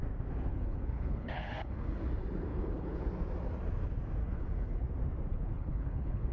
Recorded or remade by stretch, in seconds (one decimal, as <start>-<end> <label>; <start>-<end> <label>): 0.0-0.5 recorded; 0.5-2.1 remade; 2.1-2.5 recorded; 2.5-3.0 remade; 3.0-4.2 recorded; 4.2-4.8 remade; 4.8-5.3 recorded; 5.3-6.3 remade